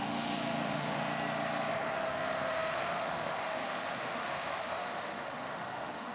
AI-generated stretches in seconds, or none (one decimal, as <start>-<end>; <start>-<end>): 0.0-1.0; 1.7-6.1